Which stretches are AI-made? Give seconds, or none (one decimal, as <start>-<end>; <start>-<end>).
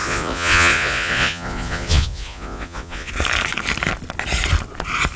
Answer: 0.0-3.1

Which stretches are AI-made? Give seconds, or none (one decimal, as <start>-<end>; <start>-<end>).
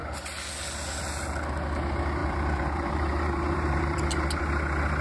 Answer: 2.2-4.4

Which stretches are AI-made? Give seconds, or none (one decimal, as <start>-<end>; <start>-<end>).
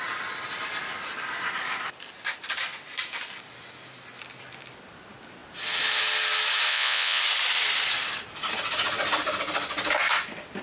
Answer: 6.7-7.2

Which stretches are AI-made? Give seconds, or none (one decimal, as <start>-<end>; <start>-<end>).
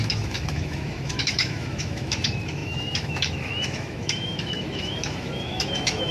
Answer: 0.0-6.1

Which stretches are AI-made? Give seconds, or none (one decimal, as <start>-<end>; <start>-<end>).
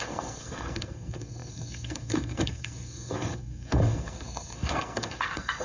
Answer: 0.0-5.6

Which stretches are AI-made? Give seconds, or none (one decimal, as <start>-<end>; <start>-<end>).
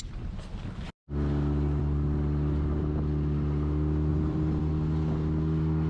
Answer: 4.1-4.6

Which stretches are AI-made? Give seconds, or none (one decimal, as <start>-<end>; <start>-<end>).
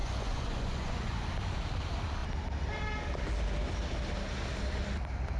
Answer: 0.0-1.3